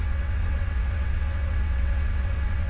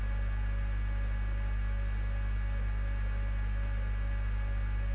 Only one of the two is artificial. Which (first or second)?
first